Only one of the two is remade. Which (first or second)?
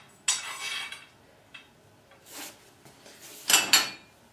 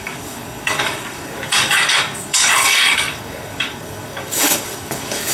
second